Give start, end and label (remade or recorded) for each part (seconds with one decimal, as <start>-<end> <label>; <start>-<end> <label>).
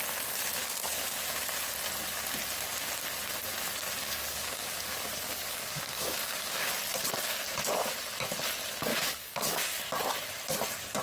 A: 0.0-0.6 recorded; 0.6-1.2 remade; 1.2-4.0 recorded; 4.0-6.7 remade; 6.7-8.9 recorded; 8.9-9.6 remade; 9.6-11.0 recorded